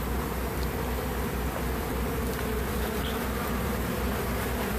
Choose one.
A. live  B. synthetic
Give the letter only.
A